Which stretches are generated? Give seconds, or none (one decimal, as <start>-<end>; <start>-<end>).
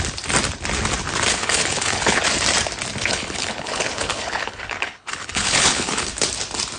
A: 1.3-2.2; 3.1-6.1